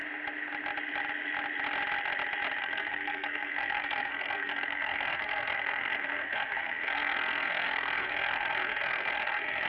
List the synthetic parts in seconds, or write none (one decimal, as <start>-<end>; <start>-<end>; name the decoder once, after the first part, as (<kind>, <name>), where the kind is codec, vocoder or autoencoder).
2.6-9.7 (codec, SNAC)